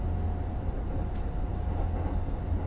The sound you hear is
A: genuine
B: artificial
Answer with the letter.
A